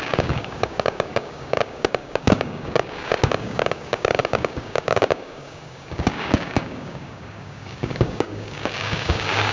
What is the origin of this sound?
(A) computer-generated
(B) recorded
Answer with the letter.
A